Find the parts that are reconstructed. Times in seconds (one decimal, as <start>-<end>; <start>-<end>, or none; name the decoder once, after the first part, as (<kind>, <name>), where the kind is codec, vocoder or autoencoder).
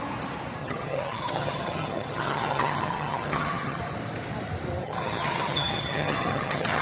0.6-3.8 (vocoder, HiFi-GAN); 4.8-6.8